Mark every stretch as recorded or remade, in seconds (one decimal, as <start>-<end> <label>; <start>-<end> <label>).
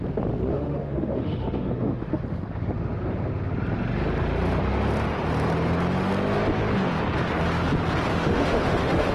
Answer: 0.0-0.5 recorded; 0.5-2.2 remade; 2.2-8.1 recorded; 8.1-9.1 remade